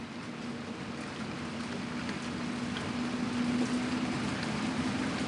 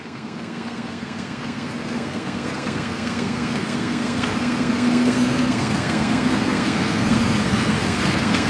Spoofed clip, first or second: second